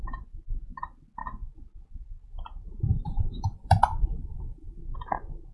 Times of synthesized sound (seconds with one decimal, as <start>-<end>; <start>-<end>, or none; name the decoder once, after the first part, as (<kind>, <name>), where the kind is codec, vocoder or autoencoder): 2.9-4.8 (vocoder, BigVGAN v2)